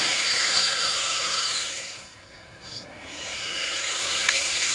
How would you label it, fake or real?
fake